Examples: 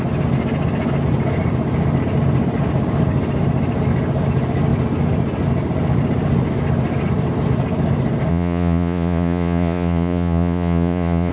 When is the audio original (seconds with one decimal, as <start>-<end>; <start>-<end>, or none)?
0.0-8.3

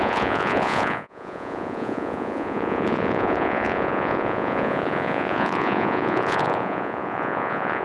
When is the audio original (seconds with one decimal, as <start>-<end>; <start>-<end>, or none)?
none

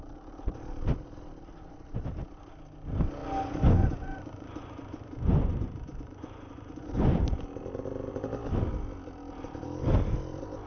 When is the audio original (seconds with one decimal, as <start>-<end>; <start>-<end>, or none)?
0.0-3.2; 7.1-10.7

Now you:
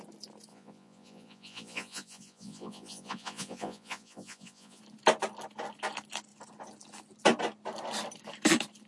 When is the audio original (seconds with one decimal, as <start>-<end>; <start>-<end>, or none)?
0.0-0.5; 4.8-8.9

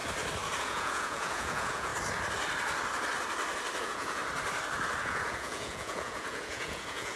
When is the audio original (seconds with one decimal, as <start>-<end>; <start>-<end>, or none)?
0.0-0.6; 1.9-3.8; 4.2-5.0

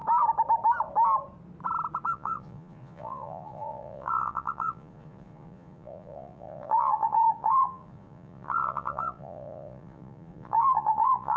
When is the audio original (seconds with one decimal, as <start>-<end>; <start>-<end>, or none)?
0.0-2.1